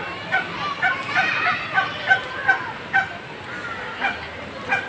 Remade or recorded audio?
recorded